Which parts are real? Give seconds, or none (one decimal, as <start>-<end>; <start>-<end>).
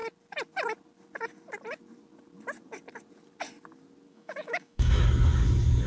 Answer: 0.0-4.1; 5.0-5.9